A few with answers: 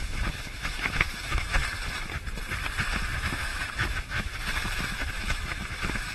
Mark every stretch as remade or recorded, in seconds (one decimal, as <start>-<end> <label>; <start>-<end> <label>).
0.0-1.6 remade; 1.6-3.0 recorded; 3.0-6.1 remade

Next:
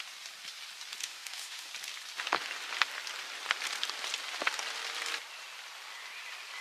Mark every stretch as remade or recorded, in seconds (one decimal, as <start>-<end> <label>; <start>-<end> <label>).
0.0-1.0 recorded; 1.0-1.7 remade; 1.7-6.6 recorded

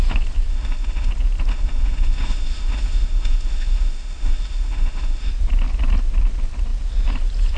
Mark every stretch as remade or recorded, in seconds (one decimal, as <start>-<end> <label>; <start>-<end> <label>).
0.0-0.5 recorded; 0.5-1.1 remade; 1.1-1.5 recorded; 1.5-5.3 remade; 5.3-7.6 recorded